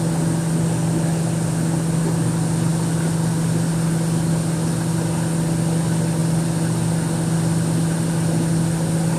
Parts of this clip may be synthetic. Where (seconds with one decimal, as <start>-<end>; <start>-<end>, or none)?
none